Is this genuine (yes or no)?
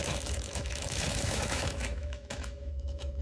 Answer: no